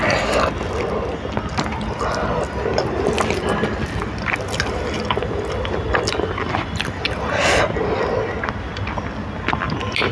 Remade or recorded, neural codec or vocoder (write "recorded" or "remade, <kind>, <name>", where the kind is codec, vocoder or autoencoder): recorded